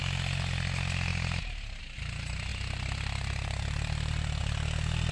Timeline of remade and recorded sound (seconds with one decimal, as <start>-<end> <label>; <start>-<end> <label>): 0.0-2.5 recorded; 2.5-4.4 remade; 4.4-5.1 recorded